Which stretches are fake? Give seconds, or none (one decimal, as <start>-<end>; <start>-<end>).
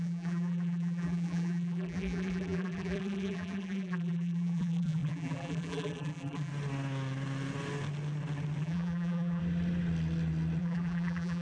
0.0-6.5; 8.6-9.4; 10.6-11.4